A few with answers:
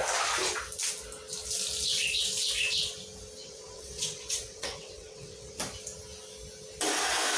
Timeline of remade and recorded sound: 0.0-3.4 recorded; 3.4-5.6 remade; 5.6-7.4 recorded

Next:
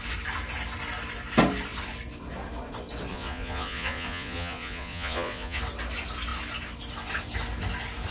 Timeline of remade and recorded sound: 0.0-3.1 recorded; 3.1-5.6 remade; 5.6-8.1 recorded

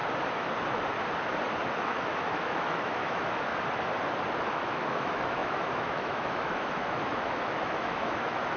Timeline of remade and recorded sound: 0.0-1.7 recorded; 1.7-3.5 remade; 3.5-4.5 recorded; 4.5-8.6 remade

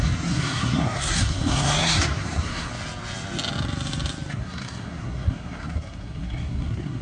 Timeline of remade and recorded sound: 0.0-2.7 remade; 2.7-4.3 recorded; 4.3-7.0 remade

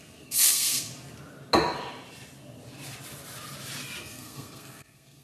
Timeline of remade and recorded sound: 0.0-0.9 remade; 0.9-4.0 recorded; 4.0-5.2 remade